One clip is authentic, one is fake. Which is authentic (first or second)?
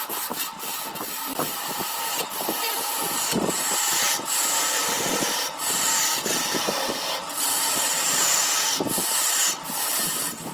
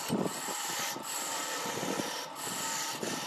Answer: second